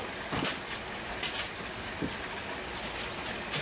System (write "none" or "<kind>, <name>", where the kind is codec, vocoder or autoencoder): none